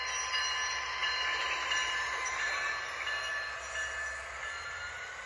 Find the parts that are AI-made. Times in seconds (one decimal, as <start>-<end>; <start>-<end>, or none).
1.0-2.7